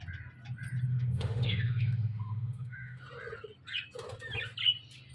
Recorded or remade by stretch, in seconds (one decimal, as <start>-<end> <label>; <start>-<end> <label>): 0.0-0.9 recorded; 0.9-3.0 remade; 3.0-5.1 recorded